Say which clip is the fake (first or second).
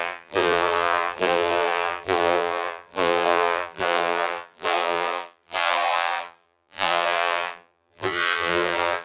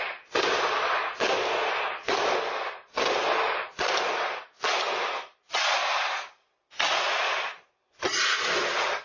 first